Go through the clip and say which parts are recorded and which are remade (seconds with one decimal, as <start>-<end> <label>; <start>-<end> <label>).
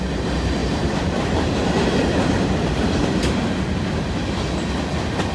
0.0-0.6 recorded; 0.6-3.4 remade; 3.4-5.3 recorded